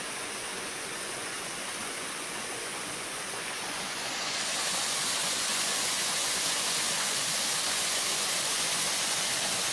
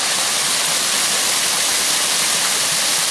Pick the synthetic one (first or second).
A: first